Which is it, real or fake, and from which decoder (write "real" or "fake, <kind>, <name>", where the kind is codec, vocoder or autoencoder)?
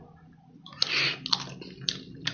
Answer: real